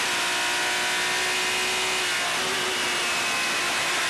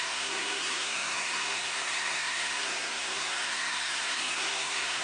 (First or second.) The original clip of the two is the first